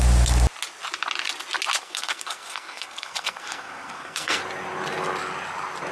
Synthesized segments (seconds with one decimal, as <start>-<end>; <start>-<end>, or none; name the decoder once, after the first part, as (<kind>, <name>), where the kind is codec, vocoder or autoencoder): 1.8-4.4 (codec, SNAC)